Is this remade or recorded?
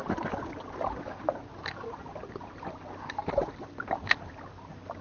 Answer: recorded